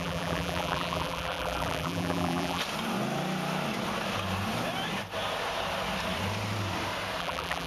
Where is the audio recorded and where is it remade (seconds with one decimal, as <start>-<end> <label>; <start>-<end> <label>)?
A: 0.0-2.6 remade; 2.6-7.2 recorded; 7.2-7.7 remade